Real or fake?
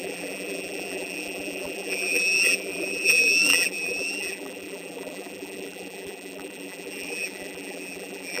fake